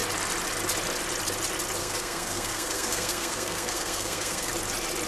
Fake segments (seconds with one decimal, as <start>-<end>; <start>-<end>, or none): 1.8-4.5